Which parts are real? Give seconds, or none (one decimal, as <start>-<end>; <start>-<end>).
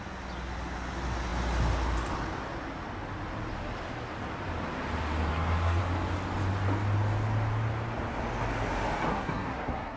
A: 0.0-5.3; 5.8-9.1